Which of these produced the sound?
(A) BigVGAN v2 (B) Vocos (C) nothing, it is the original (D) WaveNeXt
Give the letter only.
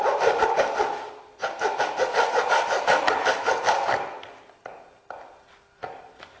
C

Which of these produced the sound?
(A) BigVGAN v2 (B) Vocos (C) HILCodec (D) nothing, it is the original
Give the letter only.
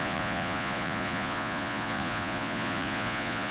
B